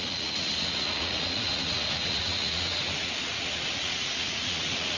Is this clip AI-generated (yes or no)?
yes